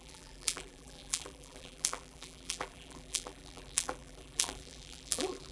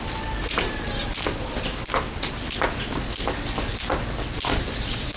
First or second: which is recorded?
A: second